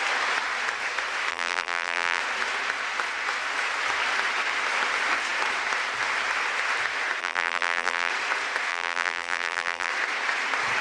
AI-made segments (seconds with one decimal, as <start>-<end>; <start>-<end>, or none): 1.3-2.2; 7.2-8.1; 8.7-9.9